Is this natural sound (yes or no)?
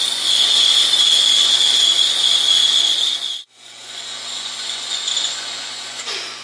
no